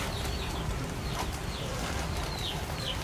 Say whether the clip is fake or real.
fake